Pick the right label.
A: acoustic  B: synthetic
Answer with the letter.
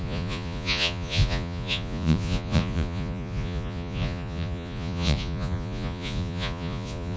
B